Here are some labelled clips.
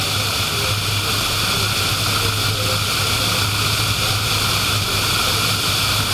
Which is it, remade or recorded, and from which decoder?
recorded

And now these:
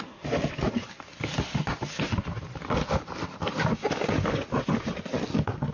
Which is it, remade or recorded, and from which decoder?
recorded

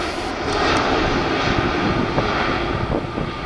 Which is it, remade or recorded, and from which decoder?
recorded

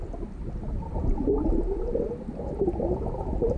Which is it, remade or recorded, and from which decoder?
recorded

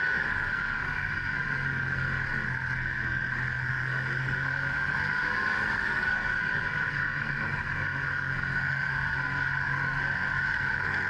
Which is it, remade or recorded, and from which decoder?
remade, codec, SNAC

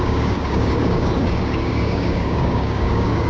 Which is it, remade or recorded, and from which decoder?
remade, codec, DAC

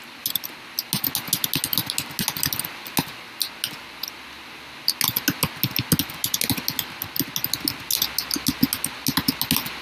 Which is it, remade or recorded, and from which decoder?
recorded